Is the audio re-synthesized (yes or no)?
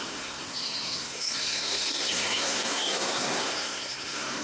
yes